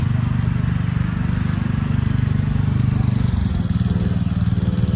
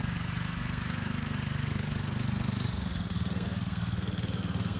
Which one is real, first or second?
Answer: first